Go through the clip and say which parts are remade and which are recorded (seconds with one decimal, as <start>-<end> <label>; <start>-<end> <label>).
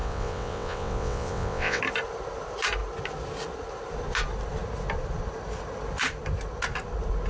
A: 0.0-1.8 remade; 1.8-7.3 recorded